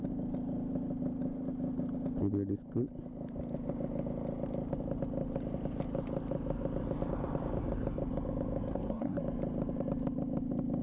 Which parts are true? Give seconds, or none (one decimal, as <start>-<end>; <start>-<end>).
0.0-8.7; 9.2-10.8